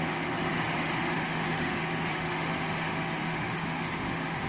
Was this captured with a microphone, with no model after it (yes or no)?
no